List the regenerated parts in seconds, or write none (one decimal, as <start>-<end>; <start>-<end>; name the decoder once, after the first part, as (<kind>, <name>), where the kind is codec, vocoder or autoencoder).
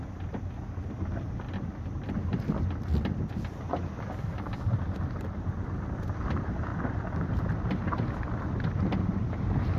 none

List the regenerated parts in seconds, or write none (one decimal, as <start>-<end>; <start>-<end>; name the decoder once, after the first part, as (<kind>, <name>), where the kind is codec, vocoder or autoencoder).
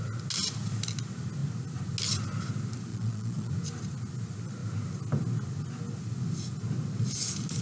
2.9-3.5 (vocoder, Vocos)